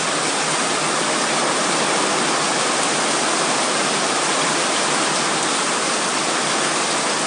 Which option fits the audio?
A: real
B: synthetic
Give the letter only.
A